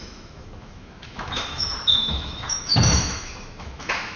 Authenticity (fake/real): fake